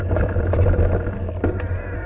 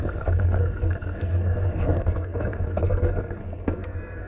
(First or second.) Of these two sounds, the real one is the first